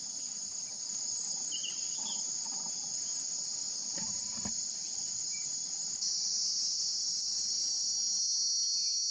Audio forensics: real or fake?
real